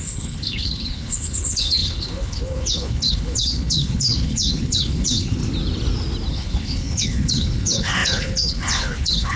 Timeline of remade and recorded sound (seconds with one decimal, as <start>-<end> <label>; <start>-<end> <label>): 0.0-5.4 remade; 5.4-6.3 recorded; 6.3-9.4 remade